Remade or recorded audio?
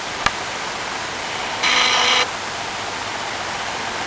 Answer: recorded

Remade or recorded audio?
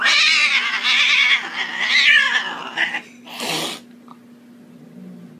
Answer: recorded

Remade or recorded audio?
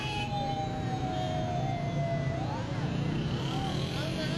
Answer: recorded